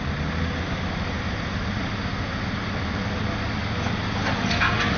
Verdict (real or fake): real